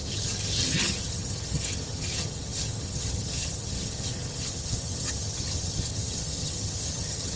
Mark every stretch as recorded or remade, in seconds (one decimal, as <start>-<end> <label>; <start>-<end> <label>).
0.0-7.4 remade

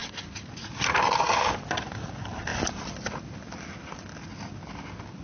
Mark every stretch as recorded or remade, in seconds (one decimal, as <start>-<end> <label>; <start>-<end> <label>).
0.0-5.2 recorded

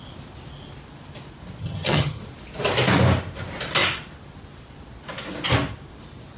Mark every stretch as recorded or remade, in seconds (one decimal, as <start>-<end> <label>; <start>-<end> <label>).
0.0-1.6 recorded; 1.6-2.2 remade; 2.2-6.4 recorded

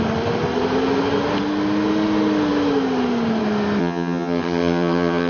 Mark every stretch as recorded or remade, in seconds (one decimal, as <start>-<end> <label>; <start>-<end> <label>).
0.0-3.8 recorded; 3.8-5.3 remade

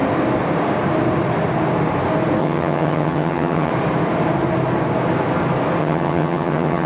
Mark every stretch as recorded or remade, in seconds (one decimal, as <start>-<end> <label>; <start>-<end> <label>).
0.0-2.4 recorded; 2.4-3.7 remade; 3.7-5.8 recorded; 5.8-6.9 remade

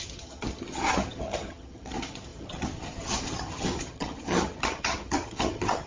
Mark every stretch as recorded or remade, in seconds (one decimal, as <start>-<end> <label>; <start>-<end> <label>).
0.0-5.9 remade

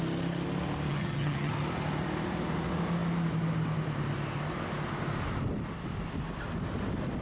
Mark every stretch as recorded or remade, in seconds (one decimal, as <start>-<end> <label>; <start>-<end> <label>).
0.0-0.9 recorded; 0.9-1.5 remade; 1.5-7.2 recorded

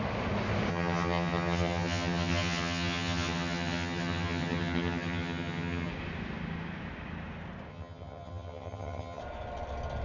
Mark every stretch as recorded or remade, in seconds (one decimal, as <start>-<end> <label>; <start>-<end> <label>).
0.0-0.7 recorded; 0.7-5.9 remade; 5.9-7.7 recorded; 7.7-9.2 remade; 9.2-10.0 recorded